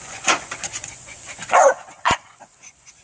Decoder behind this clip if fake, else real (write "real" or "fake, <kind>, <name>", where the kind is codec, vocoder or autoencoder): fake, vocoder, Vocos